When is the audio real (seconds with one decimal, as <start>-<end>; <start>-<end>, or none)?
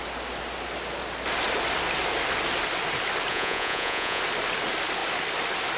0.0-3.3; 4.2-5.8